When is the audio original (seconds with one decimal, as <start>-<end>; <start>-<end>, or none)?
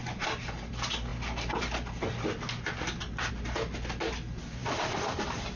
0.7-4.6